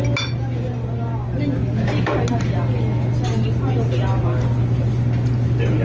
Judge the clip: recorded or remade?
recorded